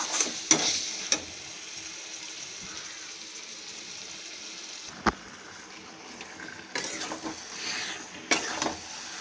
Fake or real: real